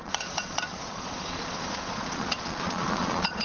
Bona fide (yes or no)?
no